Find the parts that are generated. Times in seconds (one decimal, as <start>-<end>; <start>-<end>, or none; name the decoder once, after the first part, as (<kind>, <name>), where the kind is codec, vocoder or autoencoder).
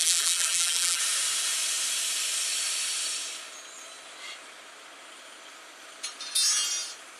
0.0-1.0 (vocoder, BigVGAN v2)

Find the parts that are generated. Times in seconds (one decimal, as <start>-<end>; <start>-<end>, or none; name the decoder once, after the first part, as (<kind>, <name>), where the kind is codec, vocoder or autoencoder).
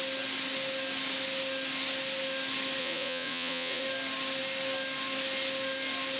2.8-3.8 (vocoder, Vocos)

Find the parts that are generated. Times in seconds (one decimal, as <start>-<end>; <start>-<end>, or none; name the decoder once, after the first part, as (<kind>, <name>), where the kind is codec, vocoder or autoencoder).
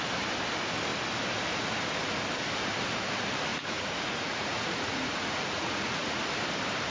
3.5-6.2 (vocoder, Vocos)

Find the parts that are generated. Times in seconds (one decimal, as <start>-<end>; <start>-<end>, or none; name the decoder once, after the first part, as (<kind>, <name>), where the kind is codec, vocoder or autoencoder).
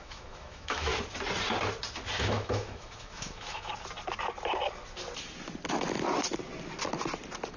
0.0-0.9 (autoencoder, DAC-VAE); 2.2-3.7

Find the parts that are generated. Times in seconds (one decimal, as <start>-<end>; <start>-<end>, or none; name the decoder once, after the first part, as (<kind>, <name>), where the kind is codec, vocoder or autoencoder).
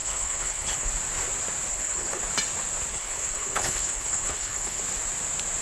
0.0-0.9 (codec, HILCodec); 1.7-2.2; 2.9-4.8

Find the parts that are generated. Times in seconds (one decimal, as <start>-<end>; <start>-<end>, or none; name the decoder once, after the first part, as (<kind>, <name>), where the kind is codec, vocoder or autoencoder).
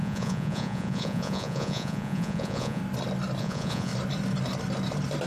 0.0-2.8 (vocoder, Vocos); 3.4-3.9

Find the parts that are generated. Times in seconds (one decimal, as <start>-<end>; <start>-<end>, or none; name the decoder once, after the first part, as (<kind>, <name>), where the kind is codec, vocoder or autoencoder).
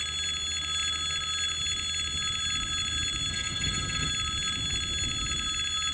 3.3-4.1 (vocoder, HiFi-GAN)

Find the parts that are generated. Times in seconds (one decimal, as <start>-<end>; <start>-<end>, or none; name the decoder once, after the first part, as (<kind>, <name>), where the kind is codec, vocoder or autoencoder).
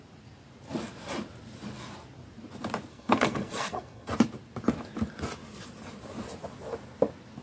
2.9-4.1 (codec, SNAC)